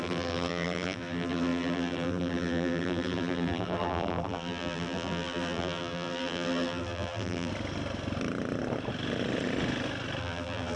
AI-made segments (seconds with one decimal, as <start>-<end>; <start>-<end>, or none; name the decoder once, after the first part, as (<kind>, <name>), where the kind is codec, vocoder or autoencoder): 0.0-7.5 (vocoder, BigVGAN v2); 10.2-10.8